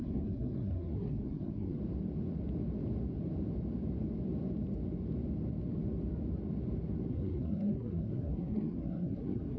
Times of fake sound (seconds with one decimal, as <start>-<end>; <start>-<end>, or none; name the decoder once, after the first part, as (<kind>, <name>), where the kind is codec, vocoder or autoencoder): 0.0-1.8 (codec, SNAC); 7.1-9.6